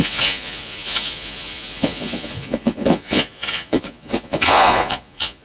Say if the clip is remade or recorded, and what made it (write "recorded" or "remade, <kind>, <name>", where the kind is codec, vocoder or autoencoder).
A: remade, vocoder, Vocos